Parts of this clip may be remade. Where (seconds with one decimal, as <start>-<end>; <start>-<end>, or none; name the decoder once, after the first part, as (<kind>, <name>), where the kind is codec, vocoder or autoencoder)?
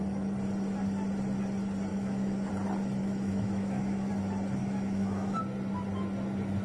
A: 1.9-2.5 (autoencoder, DAC-VAE); 3.0-4.1; 4.6-5.4